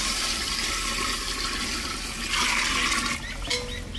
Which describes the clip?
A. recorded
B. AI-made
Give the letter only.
A